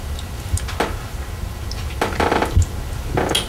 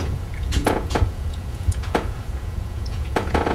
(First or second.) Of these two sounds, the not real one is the second